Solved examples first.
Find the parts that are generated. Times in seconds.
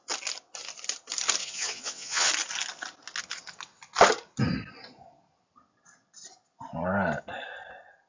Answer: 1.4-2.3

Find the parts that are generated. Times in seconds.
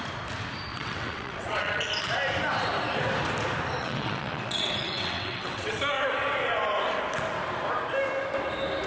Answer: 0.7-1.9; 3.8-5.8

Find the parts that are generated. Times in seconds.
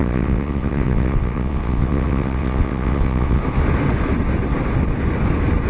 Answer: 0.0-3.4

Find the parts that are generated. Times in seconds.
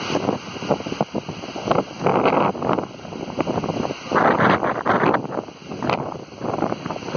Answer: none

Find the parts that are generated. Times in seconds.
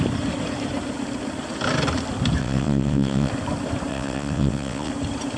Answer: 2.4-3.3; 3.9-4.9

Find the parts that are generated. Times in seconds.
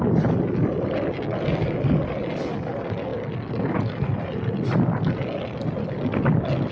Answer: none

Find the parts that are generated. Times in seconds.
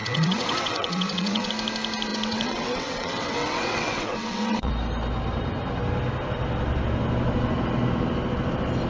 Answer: 0.0-1.5; 2.1-4.7